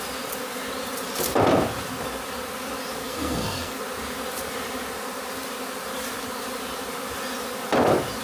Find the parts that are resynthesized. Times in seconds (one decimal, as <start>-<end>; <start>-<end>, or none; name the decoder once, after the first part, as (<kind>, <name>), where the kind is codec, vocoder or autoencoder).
3.0-3.8 (codec, SNAC)

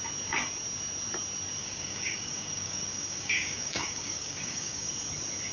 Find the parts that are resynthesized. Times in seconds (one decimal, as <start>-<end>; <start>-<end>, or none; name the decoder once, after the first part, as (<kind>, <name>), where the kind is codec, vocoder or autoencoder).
1.6-4.9 (codec, DAC)

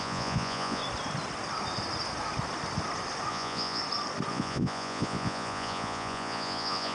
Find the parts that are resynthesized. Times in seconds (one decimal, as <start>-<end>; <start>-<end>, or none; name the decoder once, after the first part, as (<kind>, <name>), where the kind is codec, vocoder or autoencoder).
0.0-0.8 (vocoder, Vocos); 3.3-3.8; 4.3-6.9

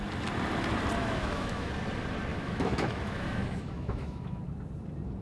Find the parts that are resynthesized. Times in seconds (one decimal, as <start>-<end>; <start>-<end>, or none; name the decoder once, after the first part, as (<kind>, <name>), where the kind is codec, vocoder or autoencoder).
1.0-1.7 (autoencoder, DAC-VAE); 2.3-4.4

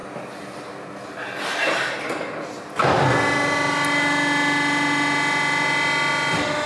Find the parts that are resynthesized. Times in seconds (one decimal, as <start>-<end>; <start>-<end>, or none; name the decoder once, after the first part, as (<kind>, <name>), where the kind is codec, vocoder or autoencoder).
none

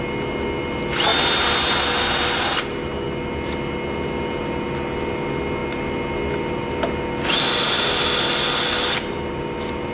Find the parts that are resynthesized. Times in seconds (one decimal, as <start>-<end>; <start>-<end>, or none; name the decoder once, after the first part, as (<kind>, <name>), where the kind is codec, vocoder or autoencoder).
none

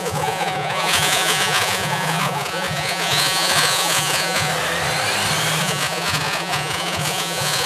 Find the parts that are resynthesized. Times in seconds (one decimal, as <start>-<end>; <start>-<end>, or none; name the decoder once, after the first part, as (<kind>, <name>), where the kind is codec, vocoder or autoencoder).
0.0-4.5 (vocoder, Vocos); 5.6-7.7

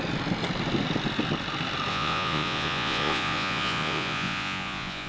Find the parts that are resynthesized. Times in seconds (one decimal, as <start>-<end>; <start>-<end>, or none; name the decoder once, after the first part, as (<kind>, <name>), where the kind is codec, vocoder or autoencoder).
1.9-5.1 (vocoder, Vocos)